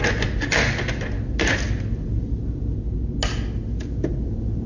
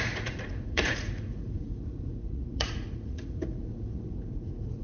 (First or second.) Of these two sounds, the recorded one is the first